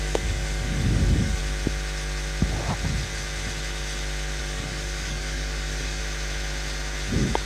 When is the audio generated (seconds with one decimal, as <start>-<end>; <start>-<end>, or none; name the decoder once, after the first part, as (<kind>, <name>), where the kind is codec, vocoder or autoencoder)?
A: 0.0-1.4 (codec, DAC); 4.4-6.0